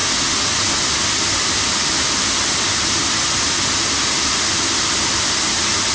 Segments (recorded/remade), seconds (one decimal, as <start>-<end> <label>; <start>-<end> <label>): 0.0-5.9 recorded